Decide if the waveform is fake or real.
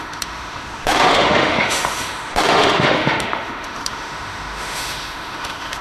fake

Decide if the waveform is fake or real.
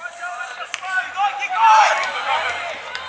real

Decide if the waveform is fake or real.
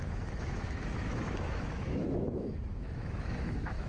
fake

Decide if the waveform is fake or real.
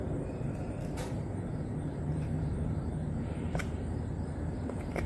fake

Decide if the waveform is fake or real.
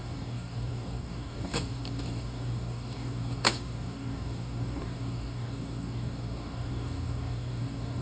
fake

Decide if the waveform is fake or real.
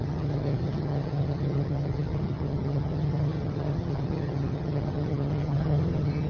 fake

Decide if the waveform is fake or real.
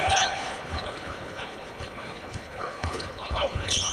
fake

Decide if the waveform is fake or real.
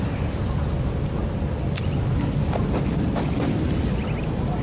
real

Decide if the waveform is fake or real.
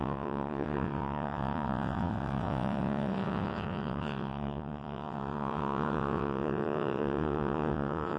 fake